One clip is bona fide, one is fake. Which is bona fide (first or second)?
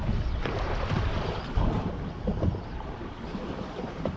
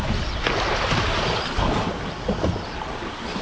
second